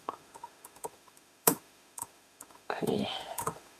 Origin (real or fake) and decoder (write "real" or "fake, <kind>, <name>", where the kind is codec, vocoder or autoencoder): fake, autoencoder, DAC-VAE